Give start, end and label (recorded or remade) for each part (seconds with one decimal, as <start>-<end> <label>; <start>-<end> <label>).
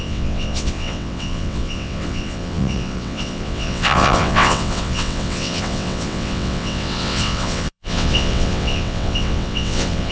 0.0-10.1 remade